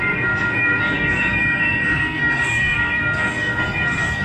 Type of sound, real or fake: fake